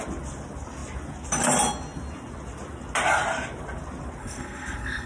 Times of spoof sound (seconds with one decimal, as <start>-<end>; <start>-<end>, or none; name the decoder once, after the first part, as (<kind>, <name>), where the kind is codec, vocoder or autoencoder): 4.2-5.1 (codec, SNAC)